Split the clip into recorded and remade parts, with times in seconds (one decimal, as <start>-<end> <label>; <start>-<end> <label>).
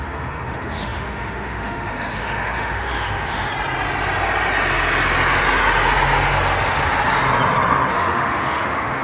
0.0-3.5 remade; 3.5-7.9 recorded; 7.9-9.0 remade